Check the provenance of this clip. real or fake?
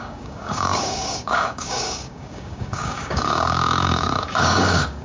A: fake